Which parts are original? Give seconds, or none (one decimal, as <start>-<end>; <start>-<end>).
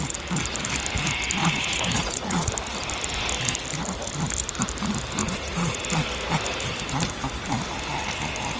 0.0-1.4; 2.5-5.2; 5.8-8.6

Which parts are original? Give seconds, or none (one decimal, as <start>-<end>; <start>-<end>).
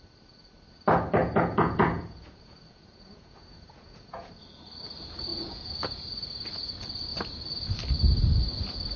0.0-1.2; 4.3-5.3; 6.0-9.0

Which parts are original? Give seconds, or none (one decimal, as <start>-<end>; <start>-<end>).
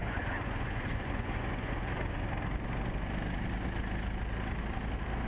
2.0-5.3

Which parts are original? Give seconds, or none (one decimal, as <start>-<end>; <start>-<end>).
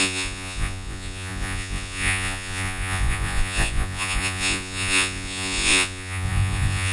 none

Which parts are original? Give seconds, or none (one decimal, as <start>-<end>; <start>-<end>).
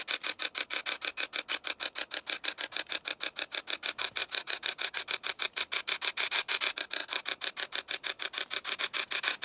0.0-4.2; 5.0-9.4